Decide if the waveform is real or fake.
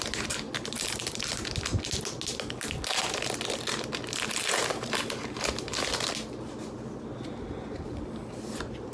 real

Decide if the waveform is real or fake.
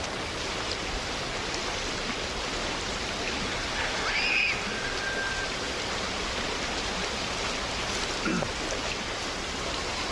real